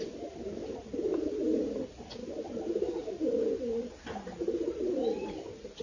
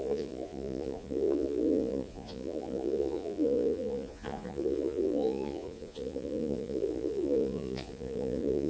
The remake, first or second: second